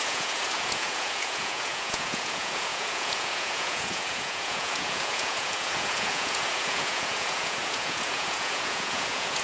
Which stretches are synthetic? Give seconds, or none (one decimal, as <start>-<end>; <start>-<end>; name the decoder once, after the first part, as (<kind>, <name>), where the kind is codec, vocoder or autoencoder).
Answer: 0.0-9.4 (vocoder, Vocos)